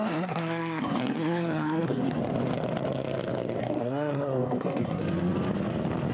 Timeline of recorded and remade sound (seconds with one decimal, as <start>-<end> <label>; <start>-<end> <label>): 0.0-2.2 remade; 2.2-3.6 recorded; 3.6-5.0 remade; 5.0-6.1 recorded